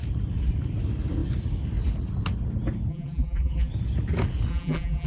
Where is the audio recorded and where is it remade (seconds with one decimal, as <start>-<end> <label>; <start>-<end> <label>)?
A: 0.0-2.9 recorded; 2.9-3.7 remade; 3.7-4.5 recorded; 4.5-5.1 remade